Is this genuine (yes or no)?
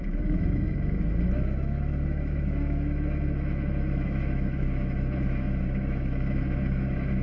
no